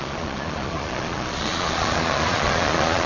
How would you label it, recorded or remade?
remade